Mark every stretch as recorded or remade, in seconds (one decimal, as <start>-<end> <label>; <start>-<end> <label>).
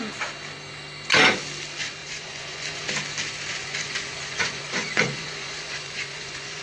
0.0-2.0 recorded; 2.0-2.9 remade; 2.9-3.6 recorded; 3.6-6.6 remade